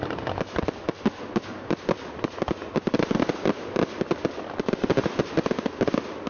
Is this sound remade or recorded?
recorded